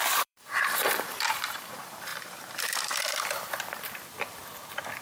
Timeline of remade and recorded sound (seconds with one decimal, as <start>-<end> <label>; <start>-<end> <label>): 0.0-4.4 remade; 4.4-5.0 recorded